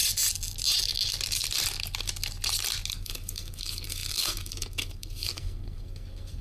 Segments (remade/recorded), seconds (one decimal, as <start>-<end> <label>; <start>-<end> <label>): 0.0-2.9 recorded; 2.9-6.4 remade